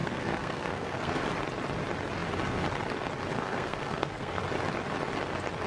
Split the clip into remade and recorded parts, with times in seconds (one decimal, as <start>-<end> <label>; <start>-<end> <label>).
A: 0.0-1.2 remade; 1.2-3.3 recorded; 3.3-4.4 remade; 4.4-5.7 recorded